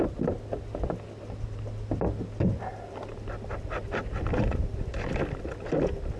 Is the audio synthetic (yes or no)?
no